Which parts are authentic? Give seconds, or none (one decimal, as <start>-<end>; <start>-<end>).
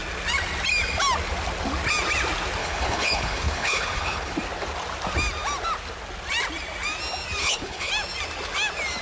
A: 0.0-2.6; 4.3-7.4; 7.9-9.0